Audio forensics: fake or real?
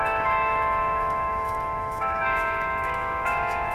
fake